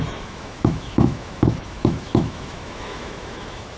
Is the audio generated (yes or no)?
yes